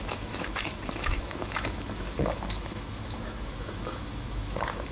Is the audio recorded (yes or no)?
no